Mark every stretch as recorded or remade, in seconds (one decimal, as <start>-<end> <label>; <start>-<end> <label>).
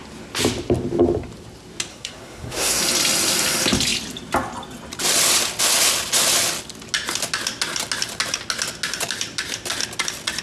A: 0.0-1.9 recorded; 1.9-2.8 remade; 2.8-10.4 recorded